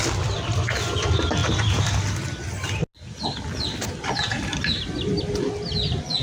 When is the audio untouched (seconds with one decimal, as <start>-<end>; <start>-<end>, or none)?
0.0-6.2